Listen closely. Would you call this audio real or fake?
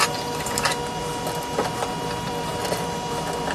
fake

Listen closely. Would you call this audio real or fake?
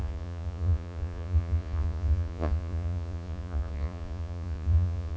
fake